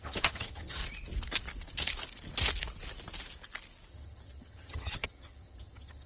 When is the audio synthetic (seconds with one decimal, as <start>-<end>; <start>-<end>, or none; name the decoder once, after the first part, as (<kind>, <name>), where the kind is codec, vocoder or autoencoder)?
0.0-0.8 (vocoder, HiFi-GAN); 3.9-6.1